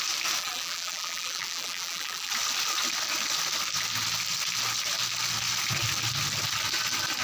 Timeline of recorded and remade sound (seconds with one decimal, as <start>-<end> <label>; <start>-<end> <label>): 0.0-0.4 recorded; 0.4-2.3 remade; 2.3-7.2 recorded